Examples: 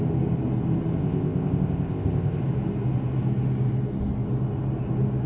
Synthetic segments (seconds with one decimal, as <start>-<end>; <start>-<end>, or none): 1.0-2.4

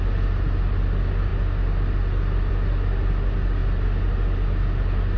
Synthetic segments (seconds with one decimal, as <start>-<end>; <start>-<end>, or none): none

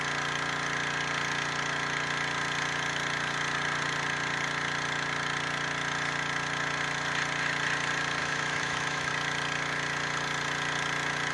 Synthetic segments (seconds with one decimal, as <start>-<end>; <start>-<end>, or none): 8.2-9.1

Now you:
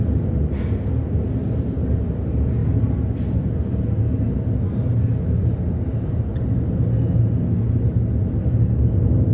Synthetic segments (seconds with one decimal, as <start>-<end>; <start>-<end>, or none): none

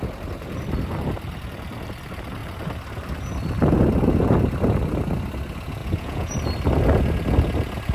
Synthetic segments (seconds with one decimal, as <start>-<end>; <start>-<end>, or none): 5.8-6.3

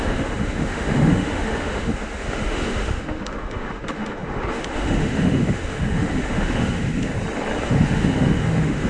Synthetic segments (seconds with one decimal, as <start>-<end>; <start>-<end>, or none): 0.0-7.1; 7.7-8.9